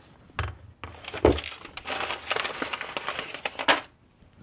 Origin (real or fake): real